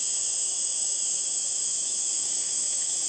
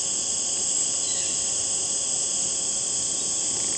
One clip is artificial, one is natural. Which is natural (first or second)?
second